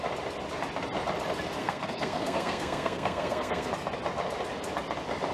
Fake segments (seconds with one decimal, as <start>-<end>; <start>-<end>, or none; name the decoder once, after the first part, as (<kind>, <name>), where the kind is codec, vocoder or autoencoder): 1.6-3.7 (codec, SNAC)